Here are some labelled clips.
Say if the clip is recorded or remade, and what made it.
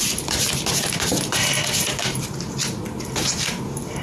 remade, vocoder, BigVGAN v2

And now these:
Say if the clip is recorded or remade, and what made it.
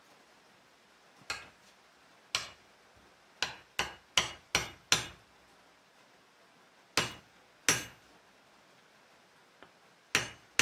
recorded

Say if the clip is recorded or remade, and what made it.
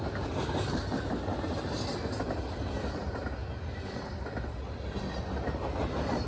recorded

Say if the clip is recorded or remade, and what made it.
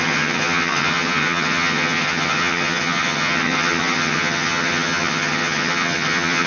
remade, vocoder, HiFi-GAN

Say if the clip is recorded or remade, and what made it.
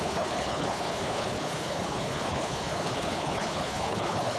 remade, codec, HILCodec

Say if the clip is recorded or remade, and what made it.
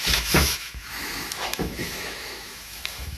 remade, autoencoder, DAC-VAE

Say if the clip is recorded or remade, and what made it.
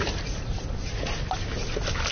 recorded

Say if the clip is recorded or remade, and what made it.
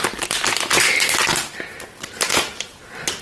recorded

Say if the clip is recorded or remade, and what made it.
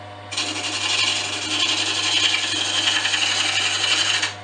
recorded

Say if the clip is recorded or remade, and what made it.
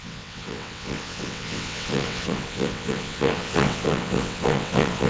remade, vocoder, WaveNeXt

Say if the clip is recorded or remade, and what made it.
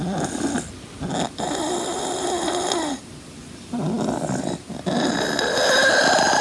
recorded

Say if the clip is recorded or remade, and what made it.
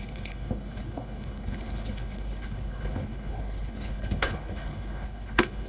remade, codec, HILCodec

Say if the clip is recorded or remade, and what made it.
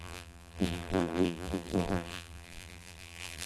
remade, vocoder, BigVGAN v2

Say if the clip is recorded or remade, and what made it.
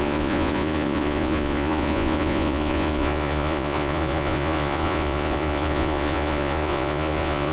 remade, vocoder, Vocos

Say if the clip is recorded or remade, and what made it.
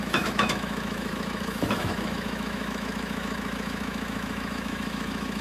remade, autoencoder, DAC-VAE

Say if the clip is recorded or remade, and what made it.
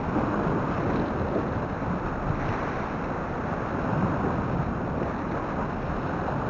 recorded